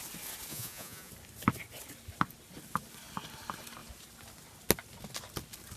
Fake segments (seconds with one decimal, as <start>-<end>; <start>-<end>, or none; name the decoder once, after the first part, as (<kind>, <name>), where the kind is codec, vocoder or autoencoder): 0.5-1.1 (vocoder, Vocos)